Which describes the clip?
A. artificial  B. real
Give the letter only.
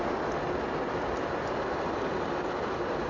B